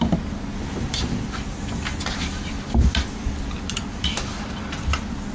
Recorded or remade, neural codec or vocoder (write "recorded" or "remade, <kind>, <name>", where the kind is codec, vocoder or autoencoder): recorded